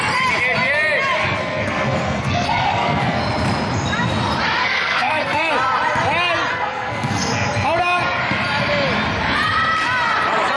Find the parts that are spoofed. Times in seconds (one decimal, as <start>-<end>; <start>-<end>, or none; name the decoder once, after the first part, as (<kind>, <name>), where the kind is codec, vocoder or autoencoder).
1.2-3.2 (codec, SNAC); 4.6-5.5; 6.5-7.3